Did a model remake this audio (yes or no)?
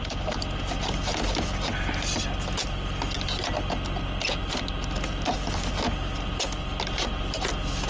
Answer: no